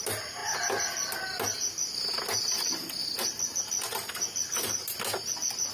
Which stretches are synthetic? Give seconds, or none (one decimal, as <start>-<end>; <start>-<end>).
none